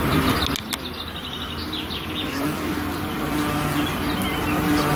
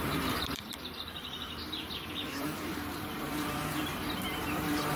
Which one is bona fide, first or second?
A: first